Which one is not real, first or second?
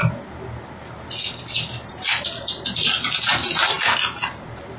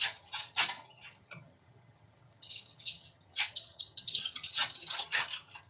second